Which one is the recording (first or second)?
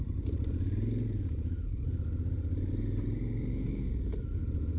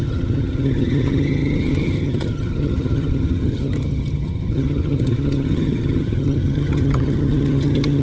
first